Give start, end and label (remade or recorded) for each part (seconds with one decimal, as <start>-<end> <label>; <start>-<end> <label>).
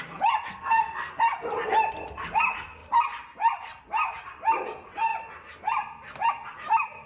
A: 0.0-0.5 recorded; 0.5-1.1 remade; 1.1-7.1 recorded